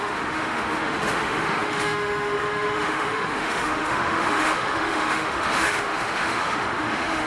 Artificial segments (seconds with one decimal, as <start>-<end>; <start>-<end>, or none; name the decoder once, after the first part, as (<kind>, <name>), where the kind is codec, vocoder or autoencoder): 0.0-7.3 (autoencoder, DAC-VAE)

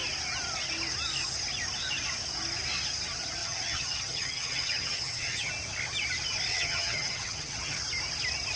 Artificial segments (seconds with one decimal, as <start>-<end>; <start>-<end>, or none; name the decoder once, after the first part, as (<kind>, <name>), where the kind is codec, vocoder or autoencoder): 3.4-5.5 (vocoder, HiFi-GAN); 6.5-7.8

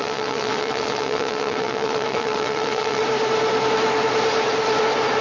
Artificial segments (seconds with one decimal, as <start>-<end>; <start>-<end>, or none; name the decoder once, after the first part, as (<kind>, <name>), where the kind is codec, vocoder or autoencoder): 0.0-3.0 (vocoder, WaveNeXt)

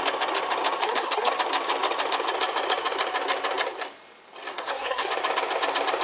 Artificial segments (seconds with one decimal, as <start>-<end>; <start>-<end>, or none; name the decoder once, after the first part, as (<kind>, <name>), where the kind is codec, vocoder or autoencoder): 0.8-1.3 (codec, SNAC); 4.5-5.1